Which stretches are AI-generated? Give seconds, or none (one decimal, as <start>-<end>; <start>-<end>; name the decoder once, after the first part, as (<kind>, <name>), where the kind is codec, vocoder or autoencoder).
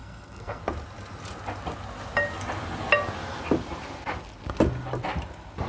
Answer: 0.0-0.6 (codec, SNAC)